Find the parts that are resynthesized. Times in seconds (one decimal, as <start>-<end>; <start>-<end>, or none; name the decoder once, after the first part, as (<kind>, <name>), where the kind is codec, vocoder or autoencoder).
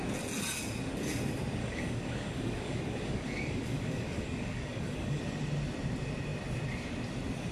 1.6-5.2 (codec, DAC)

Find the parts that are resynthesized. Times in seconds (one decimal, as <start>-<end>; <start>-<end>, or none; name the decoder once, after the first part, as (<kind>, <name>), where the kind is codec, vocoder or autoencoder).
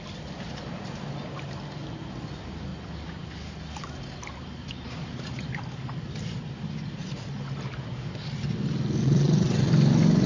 9.0-9.7 (vocoder, WaveNeXt)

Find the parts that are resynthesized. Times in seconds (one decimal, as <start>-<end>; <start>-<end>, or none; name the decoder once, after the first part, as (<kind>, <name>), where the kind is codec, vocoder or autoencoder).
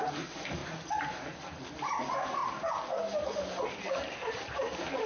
0.0-0.6 (vocoder, BigVGAN v2); 1.7-2.4; 3.7-5.1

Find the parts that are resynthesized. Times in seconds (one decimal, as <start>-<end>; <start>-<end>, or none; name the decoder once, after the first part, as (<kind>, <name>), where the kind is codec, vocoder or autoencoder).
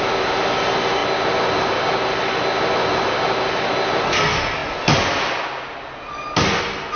none